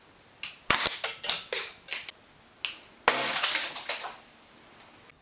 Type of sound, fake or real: real